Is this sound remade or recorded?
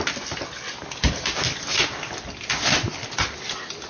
recorded